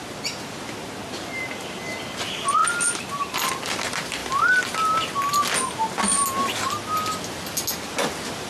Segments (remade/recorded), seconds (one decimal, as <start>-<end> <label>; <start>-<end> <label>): 0.0-8.5 recorded